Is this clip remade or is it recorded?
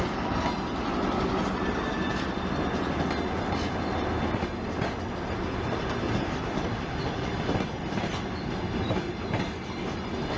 recorded